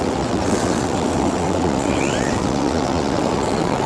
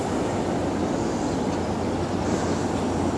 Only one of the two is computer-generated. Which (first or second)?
first